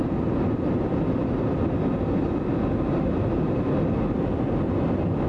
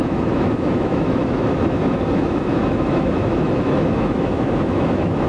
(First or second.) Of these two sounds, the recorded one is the first